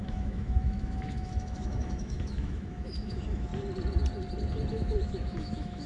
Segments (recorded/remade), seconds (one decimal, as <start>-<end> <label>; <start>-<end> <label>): 0.0-3.5 remade; 3.5-4.7 recorded; 4.7-5.9 remade